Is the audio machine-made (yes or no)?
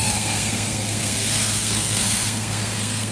yes